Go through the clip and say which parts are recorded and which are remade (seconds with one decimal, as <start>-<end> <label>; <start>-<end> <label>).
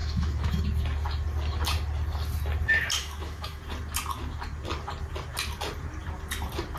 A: 0.0-0.6 remade; 0.6-3.0 recorded; 3.0-3.6 remade; 3.6-6.8 recorded